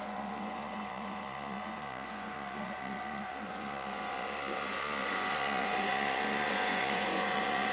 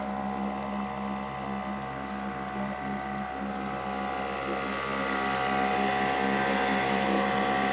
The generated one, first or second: first